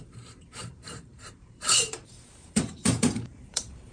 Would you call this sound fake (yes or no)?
yes